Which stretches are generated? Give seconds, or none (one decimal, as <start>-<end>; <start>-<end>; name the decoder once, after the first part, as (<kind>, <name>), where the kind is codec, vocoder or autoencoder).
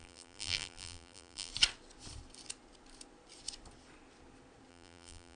0.0-1.5 (vocoder, BigVGAN v2); 4.7-5.4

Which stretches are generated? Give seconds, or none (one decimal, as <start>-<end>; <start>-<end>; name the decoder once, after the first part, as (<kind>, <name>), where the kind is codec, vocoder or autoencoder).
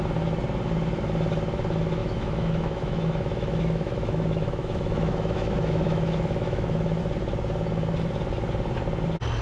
2.0-7.0 (autoencoder, DAC-VAE)